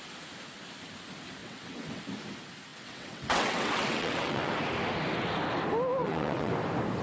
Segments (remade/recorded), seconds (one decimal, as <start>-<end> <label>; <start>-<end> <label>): 0.0-1.4 recorded; 1.4-2.0 remade; 2.0-2.7 recorded; 2.7-4.5 remade; 4.5-6.0 recorded; 6.0-6.5 remade; 6.5-7.0 recorded